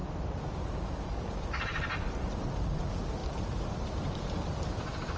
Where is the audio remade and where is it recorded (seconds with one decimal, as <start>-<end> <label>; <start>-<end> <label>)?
0.0-1.3 remade; 1.3-3.2 recorded; 3.2-4.8 remade; 4.8-5.2 recorded